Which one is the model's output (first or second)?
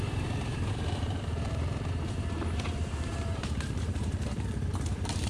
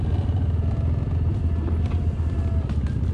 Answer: first